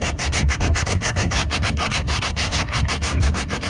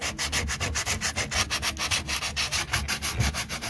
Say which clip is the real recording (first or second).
second